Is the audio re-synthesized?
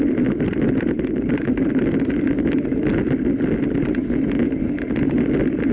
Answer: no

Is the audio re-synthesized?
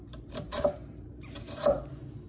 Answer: yes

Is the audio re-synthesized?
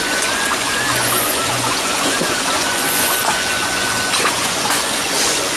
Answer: yes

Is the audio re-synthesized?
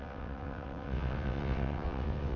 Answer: yes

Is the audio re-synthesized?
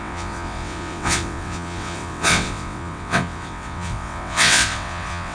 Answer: yes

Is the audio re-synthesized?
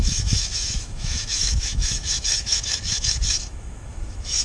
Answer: yes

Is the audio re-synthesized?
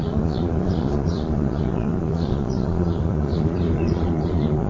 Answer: yes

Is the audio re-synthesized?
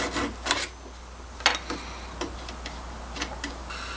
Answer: no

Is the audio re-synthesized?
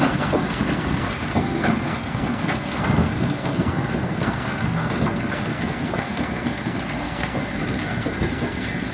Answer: yes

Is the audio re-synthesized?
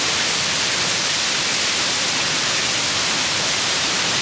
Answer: no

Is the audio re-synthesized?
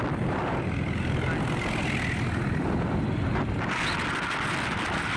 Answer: no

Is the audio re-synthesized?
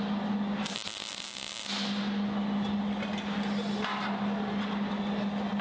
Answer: no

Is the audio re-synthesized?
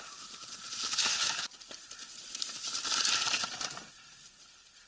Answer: no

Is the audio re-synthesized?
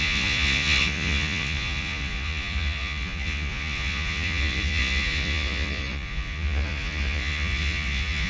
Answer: yes